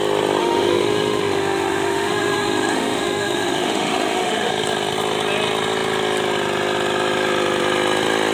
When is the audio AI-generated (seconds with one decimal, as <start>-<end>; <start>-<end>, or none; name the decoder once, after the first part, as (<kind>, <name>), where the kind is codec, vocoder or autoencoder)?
0.4-4.5 (autoencoder, DAC-VAE)